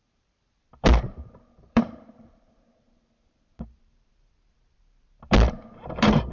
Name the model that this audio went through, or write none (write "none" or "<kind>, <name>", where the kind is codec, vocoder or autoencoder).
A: vocoder, BigVGAN v2